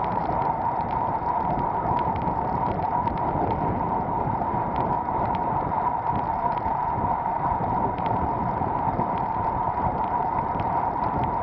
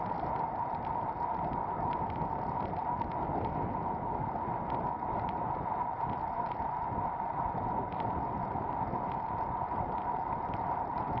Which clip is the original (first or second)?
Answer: second